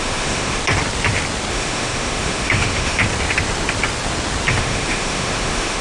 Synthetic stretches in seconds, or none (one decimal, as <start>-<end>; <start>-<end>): 0.0-0.6; 1.5-3.0; 4.5-5.8